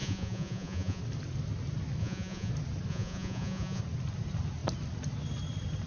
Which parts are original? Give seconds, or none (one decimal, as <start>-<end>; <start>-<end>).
1.0-2.0; 2.5-2.9; 3.8-5.9